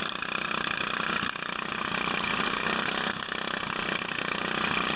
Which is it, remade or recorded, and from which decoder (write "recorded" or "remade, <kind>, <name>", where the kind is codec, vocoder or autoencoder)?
recorded